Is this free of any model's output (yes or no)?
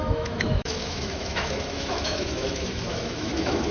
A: no